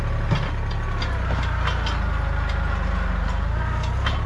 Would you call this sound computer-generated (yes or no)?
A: no